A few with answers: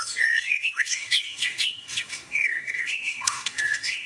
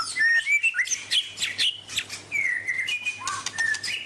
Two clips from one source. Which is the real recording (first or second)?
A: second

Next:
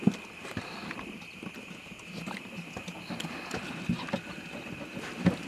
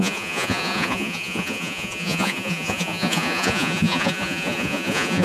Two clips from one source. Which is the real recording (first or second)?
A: first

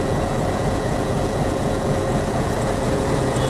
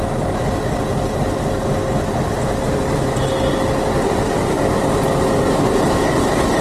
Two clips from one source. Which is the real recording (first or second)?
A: second